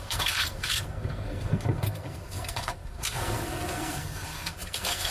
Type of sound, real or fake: fake